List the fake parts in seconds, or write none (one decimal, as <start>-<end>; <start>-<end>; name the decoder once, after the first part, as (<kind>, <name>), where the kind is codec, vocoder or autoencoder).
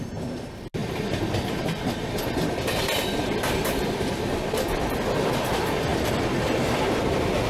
none